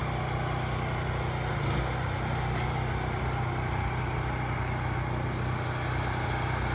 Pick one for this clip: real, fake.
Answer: real